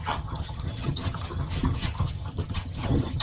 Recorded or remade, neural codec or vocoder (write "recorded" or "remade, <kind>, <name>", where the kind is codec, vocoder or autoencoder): remade, vocoder, HiFi-GAN